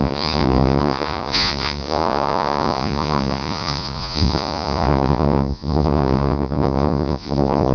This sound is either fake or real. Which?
fake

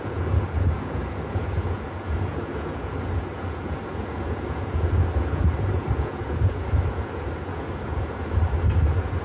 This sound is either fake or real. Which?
fake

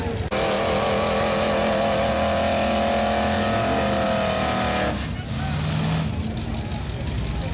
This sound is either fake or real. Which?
real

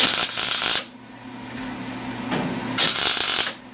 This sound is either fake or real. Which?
real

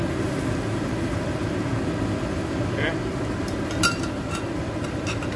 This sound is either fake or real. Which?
real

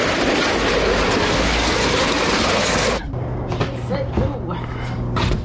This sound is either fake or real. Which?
real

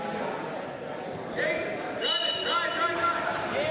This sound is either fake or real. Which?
real